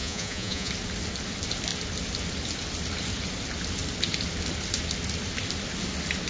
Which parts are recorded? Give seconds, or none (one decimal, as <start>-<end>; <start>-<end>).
0.7-6.3